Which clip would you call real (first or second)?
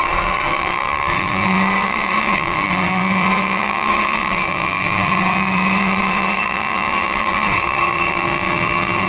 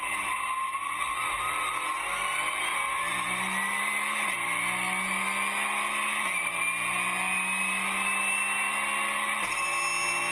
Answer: second